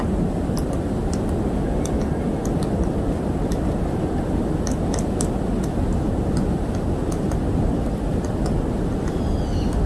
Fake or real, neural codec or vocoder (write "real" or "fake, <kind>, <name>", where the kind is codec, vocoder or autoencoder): real